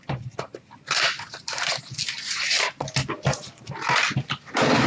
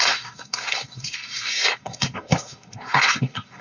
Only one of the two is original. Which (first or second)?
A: first